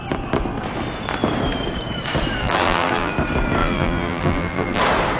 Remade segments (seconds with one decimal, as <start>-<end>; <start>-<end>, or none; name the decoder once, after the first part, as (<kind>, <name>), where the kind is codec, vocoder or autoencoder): 2.4-3.1 (vocoder, BigVGAN v2); 3.6-4.8